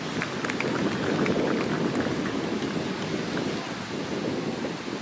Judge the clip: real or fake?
real